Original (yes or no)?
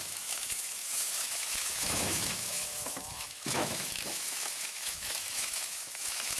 no